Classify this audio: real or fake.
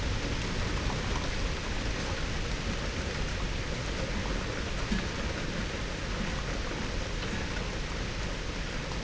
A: real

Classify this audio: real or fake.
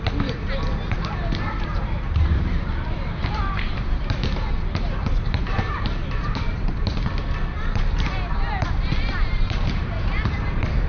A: fake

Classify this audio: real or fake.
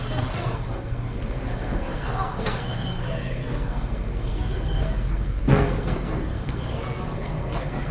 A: fake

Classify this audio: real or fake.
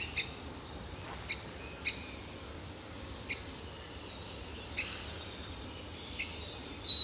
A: real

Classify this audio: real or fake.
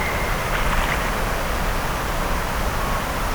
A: real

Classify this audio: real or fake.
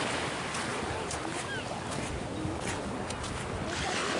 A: real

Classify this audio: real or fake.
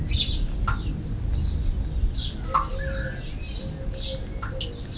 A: real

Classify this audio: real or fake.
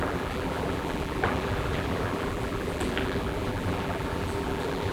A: fake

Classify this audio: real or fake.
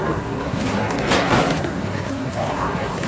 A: fake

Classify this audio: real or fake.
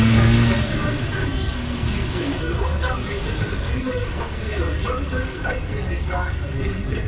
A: fake